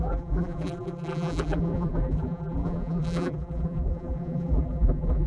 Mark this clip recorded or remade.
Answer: remade